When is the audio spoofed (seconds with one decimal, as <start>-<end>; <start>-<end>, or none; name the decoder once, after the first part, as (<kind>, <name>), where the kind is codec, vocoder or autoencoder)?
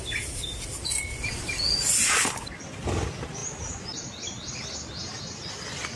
none